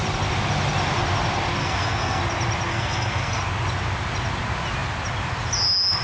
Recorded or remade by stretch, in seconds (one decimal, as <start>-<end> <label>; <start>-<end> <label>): 0.0-1.6 recorded; 1.6-2.2 remade; 2.2-2.7 recorded; 2.7-3.4 remade; 3.4-6.0 recorded